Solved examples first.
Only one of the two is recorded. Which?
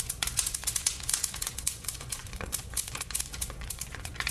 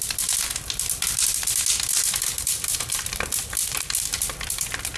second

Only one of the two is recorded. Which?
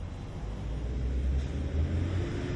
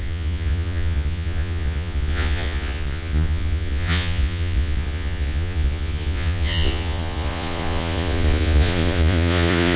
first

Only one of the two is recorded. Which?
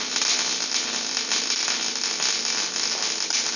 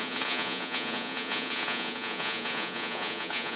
first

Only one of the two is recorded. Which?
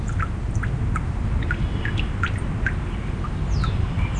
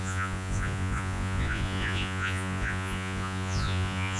first